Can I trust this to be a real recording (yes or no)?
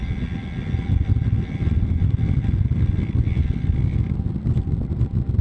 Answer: yes